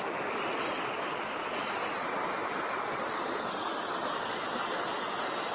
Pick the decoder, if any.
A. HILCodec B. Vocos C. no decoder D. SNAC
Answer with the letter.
C